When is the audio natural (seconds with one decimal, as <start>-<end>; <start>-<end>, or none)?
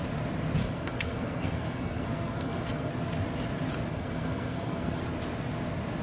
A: 0.0-0.6; 2.9-3.9; 5.0-6.0